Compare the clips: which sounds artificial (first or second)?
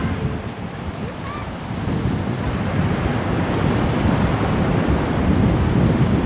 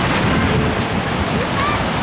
first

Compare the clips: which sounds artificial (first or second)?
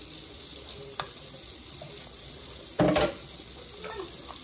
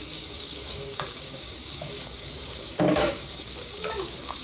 second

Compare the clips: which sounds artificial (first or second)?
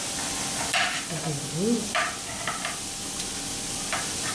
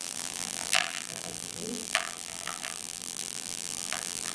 second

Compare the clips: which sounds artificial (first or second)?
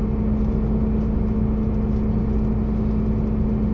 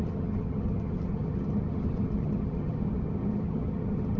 second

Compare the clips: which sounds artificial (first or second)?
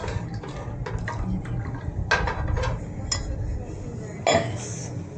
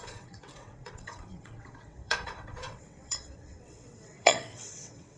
second